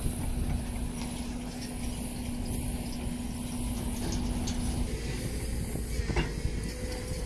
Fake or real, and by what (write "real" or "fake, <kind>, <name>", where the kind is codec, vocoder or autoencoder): real